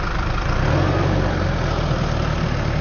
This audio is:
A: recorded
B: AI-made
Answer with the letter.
B